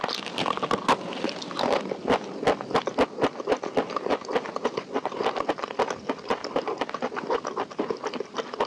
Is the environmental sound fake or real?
real